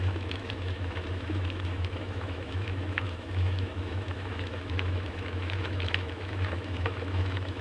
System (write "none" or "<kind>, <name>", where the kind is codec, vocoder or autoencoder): autoencoder, DAC-VAE